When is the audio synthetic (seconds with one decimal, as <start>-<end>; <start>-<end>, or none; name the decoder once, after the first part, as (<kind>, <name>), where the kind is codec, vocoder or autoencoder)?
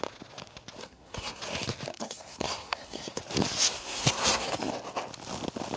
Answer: 0.8-1.4 (codec, SNAC); 1.9-3.2; 3.8-4.7